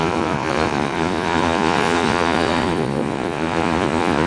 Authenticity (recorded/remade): remade